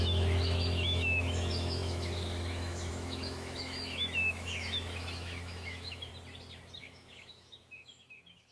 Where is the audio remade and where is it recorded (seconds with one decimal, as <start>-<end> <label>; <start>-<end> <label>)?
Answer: 0.0-6.1 remade; 6.1-6.8 recorded; 6.8-8.5 remade